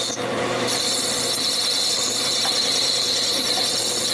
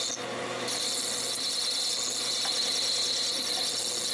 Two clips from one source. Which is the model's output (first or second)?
first